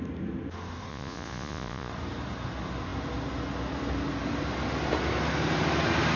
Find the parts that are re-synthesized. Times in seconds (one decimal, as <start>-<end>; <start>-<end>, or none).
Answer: 0.9-1.9